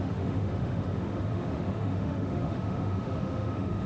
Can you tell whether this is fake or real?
fake